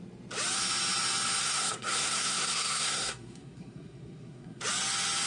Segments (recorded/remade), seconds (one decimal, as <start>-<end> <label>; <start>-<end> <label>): 0.0-1.4 recorded; 1.4-4.6 remade; 4.6-5.3 recorded